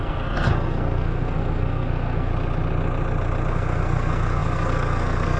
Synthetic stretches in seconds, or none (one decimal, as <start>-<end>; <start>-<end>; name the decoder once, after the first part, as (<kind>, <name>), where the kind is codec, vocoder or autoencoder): 0.0-2.3 (codec, SNAC); 3.5-5.4